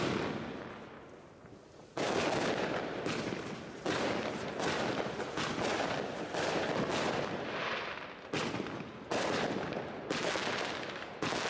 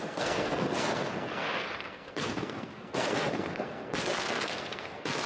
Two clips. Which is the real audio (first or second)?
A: first